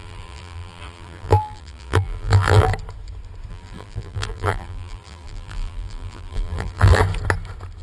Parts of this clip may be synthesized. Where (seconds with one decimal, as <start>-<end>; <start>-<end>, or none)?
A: 0.0-2.7; 3.5-7.0